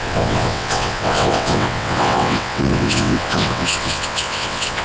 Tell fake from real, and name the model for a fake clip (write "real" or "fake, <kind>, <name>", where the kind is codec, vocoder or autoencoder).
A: fake, vocoder, WaveNeXt